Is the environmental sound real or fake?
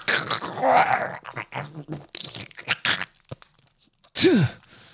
real